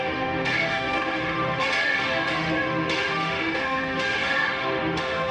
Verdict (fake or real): fake